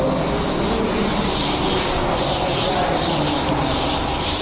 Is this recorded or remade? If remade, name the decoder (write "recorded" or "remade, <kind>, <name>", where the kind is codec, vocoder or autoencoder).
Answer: recorded